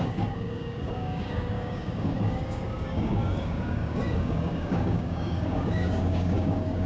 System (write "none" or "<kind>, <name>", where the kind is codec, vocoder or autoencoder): codec, DAC